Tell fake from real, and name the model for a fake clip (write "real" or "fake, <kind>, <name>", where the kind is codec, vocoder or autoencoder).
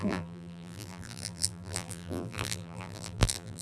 fake, vocoder, BigVGAN v2